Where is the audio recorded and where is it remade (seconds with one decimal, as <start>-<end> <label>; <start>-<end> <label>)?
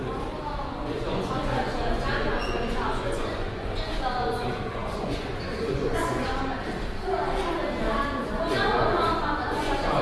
0.0-0.6 recorded; 0.6-6.3 remade; 6.3-8.2 recorded; 8.2-10.0 remade